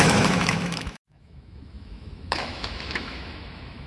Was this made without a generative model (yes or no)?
no